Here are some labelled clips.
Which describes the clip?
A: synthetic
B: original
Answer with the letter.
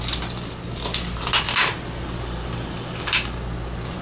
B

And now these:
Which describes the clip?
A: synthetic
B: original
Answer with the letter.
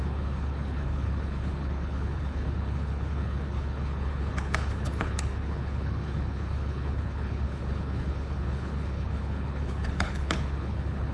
A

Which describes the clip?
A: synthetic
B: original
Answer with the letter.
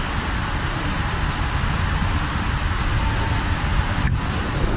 B